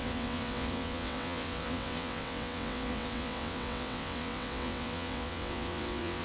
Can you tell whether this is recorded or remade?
remade